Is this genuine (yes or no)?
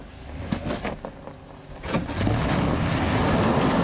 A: yes